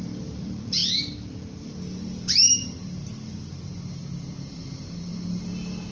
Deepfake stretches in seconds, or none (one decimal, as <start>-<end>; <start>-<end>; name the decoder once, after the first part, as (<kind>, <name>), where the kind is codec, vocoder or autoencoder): 0.0-0.8 (vocoder, BigVGAN v2); 1.6-4.0; 4.5-5.1